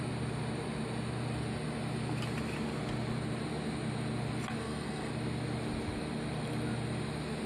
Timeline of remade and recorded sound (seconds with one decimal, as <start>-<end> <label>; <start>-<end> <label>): 0.0-4.6 recorded; 4.6-5.1 remade; 5.1-7.5 recorded